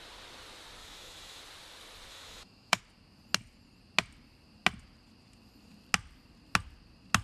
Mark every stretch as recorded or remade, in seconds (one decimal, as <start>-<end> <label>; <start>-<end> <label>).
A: 0.0-0.8 recorded; 0.8-1.4 remade; 1.4-2.1 recorded; 2.1-2.8 remade; 2.8-7.2 recorded